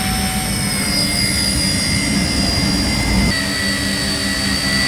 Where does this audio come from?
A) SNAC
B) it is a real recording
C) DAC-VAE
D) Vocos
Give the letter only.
B